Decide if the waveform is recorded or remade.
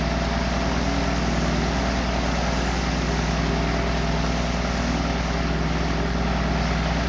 recorded